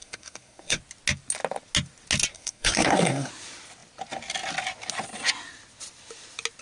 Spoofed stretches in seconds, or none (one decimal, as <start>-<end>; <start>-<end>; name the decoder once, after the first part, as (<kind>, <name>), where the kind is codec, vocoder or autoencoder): 0.0-0.8 (codec, SNAC); 2.3-3.3